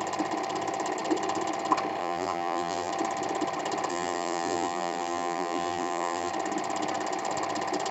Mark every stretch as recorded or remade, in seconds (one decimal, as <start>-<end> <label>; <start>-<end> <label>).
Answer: 0.0-2.0 recorded; 2.0-2.9 remade; 2.9-3.9 recorded; 3.9-6.3 remade; 6.3-7.9 recorded